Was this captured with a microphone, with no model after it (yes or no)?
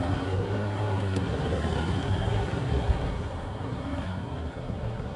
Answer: no